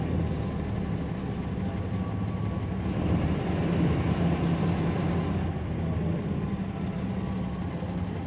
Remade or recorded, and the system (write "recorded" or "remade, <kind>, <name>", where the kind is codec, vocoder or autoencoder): recorded